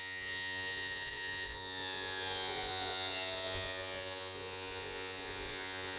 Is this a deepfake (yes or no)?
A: yes